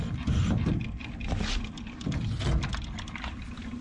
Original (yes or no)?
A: yes